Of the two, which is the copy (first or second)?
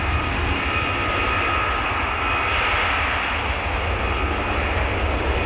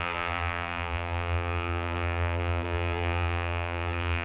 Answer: second